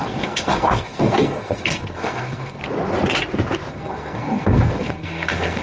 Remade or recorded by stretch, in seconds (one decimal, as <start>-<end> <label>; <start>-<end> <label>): 0.0-2.6 remade; 2.6-3.7 recorded; 3.7-5.6 remade